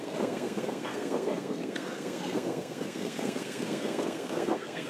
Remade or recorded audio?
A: remade